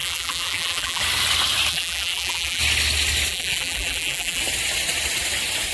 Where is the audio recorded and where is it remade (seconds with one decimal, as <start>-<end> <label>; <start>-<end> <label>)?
0.0-1.0 remade; 1.0-1.7 recorded; 1.7-2.6 remade; 2.6-3.3 recorded; 3.3-4.4 remade; 4.4-5.7 recorded